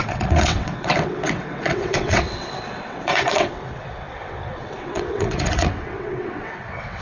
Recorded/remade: remade